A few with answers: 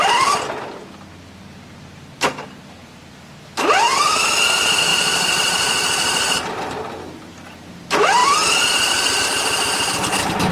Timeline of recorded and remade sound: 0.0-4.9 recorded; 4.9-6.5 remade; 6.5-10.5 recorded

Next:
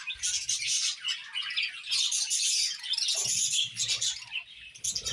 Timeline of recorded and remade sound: 0.0-5.1 recorded